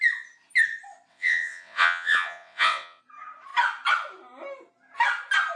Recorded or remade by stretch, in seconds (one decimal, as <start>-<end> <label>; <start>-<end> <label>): 0.0-1.1 recorded; 1.1-3.0 remade; 3.0-5.6 recorded